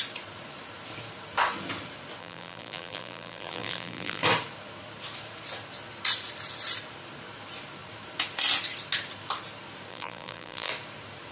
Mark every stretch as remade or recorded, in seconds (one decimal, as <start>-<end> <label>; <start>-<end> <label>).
0.0-2.2 recorded; 2.2-4.2 remade; 4.2-9.9 recorded; 9.9-10.7 remade; 10.7-11.3 recorded

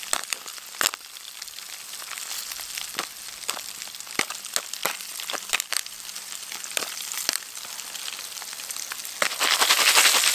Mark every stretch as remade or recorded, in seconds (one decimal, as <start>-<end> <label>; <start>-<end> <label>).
0.0-4.8 recorded; 4.8-7.2 remade; 7.2-10.3 recorded

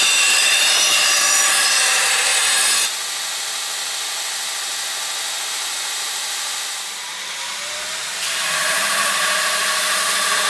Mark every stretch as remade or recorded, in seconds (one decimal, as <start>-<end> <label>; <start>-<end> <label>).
0.0-2.3 remade; 2.3-5.5 recorded; 5.5-10.5 remade

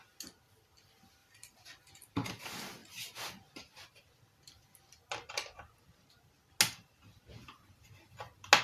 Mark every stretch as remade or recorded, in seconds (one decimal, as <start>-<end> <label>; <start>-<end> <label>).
0.0-1.2 recorded; 1.2-2.4 remade; 2.4-8.6 recorded

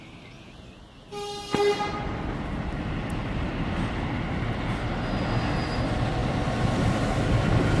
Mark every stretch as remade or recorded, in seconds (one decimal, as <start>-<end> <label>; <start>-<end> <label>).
0.0-7.8 recorded